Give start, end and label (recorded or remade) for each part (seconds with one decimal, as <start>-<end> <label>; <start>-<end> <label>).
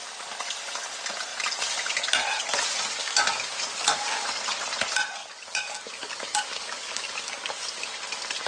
0.0-3.0 recorded; 3.0-4.4 remade; 4.4-5.2 recorded; 5.2-7.9 remade; 7.9-8.5 recorded